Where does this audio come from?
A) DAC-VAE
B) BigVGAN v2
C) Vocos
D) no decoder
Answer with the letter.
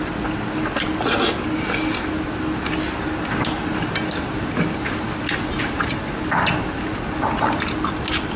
D